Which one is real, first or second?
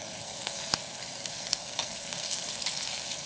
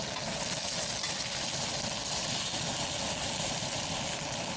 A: second